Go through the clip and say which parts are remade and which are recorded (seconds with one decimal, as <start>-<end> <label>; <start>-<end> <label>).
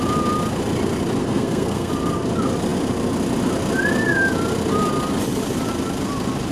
0.0-1.2 recorded; 1.2-1.9 remade; 1.9-6.5 recorded